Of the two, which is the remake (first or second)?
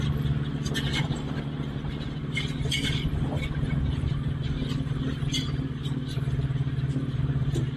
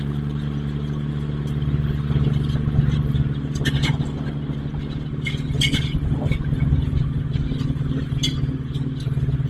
first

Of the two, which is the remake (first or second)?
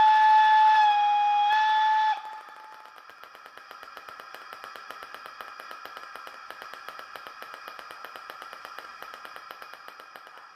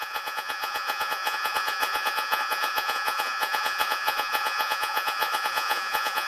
second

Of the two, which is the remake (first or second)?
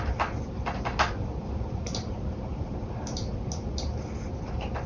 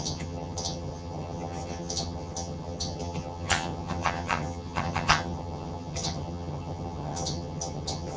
second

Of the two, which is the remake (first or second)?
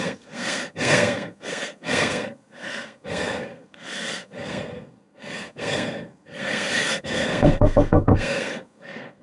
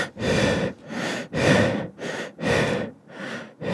first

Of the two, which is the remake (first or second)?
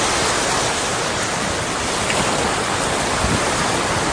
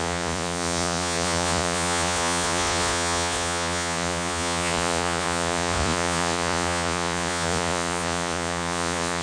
second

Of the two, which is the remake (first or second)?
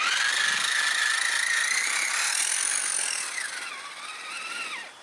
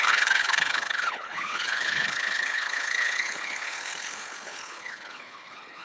second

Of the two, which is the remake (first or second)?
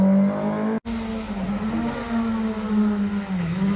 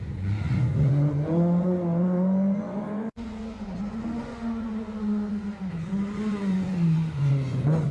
second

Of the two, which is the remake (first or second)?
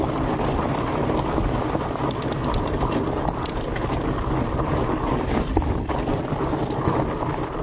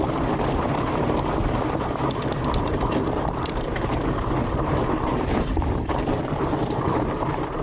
second